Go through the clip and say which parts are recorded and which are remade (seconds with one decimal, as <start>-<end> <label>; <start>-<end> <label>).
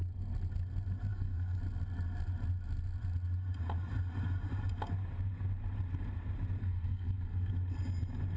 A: 0.0-1.1 recorded; 1.1-1.6 remade; 1.6-6.6 recorded; 6.6-7.5 remade; 7.5-8.4 recorded